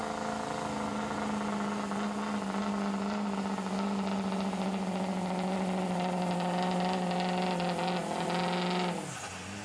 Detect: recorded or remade recorded